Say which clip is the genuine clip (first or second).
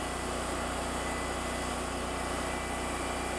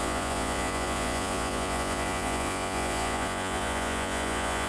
first